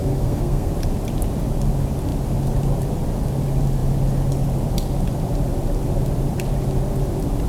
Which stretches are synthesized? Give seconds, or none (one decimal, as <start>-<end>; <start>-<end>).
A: 0.0-0.7